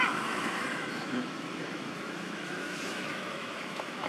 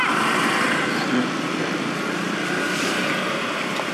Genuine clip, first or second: second